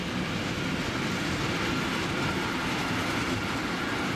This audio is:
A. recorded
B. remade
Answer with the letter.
A